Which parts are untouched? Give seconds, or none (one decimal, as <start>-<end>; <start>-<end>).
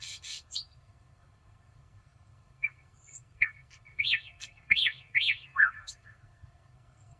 none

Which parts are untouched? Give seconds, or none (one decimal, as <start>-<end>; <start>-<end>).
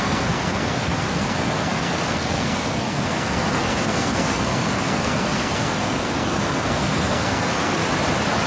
7.8-8.5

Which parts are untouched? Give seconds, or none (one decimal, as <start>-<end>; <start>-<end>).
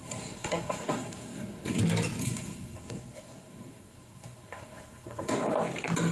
1.8-2.2; 5.5-6.1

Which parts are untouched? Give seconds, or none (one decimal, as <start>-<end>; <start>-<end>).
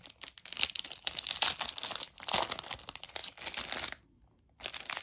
0.0-5.0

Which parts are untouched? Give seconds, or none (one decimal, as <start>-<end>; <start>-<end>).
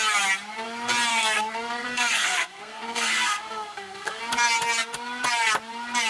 0.0-1.1; 4.2-6.1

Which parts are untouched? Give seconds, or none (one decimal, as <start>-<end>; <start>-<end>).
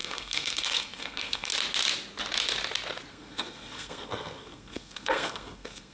1.5-3.1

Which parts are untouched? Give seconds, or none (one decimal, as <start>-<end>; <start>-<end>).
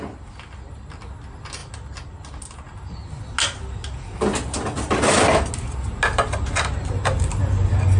0.0-8.0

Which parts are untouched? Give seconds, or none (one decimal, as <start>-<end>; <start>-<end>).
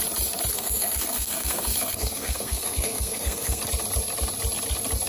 0.0-0.5; 3.6-5.1